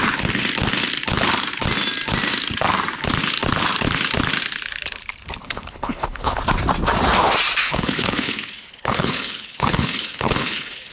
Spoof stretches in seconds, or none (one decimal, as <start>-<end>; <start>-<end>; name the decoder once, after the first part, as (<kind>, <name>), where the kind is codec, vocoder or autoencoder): 5.4-6.4 (codec, HILCodec); 7.6-10.9